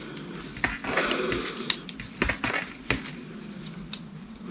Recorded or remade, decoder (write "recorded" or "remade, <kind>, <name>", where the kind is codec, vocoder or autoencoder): recorded